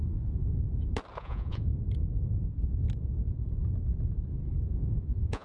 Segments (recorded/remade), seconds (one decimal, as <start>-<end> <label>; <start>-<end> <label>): 0.0-1.2 recorded; 1.2-1.7 remade; 1.7-4.9 recorded; 4.9-5.4 remade